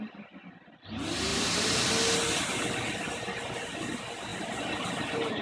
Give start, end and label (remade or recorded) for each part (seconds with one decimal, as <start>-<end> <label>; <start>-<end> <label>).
0.0-1.3 recorded; 1.3-1.9 remade; 1.9-5.4 recorded